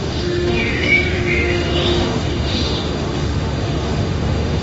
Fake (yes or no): yes